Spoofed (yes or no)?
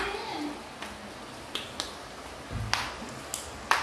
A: no